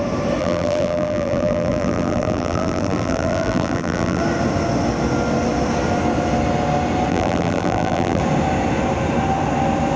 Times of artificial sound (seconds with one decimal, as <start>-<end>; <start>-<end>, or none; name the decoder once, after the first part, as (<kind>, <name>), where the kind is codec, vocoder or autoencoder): 0.4-4.2 (vocoder, BigVGAN v2); 7.1-8.2